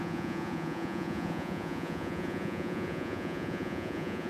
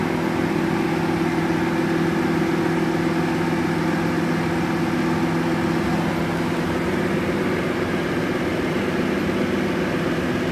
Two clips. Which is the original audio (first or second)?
second